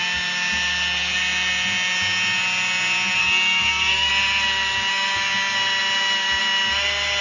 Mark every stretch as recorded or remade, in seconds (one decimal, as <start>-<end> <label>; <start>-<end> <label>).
0.0-3.2 recorded; 3.2-4.1 remade; 4.1-7.2 recorded